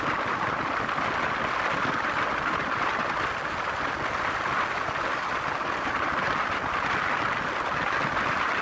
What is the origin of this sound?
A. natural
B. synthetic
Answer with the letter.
A